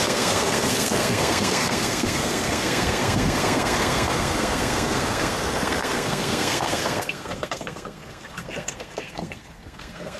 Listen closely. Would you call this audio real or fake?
fake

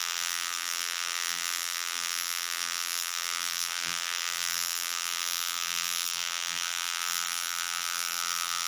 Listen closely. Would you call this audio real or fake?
fake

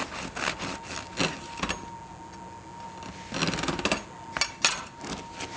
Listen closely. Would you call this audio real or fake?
real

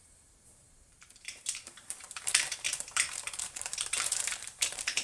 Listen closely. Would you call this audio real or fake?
fake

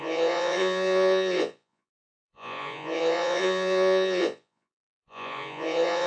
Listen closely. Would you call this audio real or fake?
fake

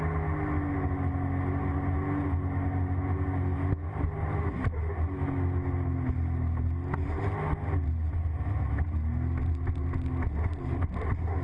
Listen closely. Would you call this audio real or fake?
real